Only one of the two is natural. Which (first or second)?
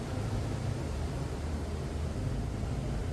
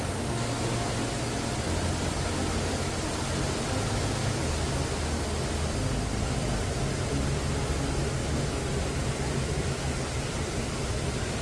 second